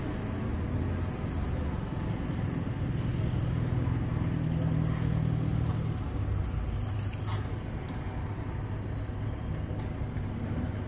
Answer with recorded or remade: recorded